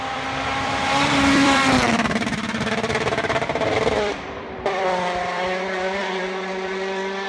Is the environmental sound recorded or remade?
remade